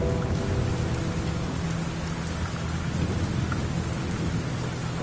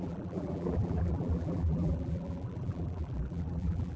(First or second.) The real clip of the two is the first